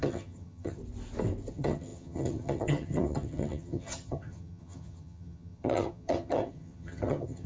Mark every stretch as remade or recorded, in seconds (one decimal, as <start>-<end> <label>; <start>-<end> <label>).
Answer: 0.0-0.8 remade; 0.8-1.5 recorded; 1.5-7.5 remade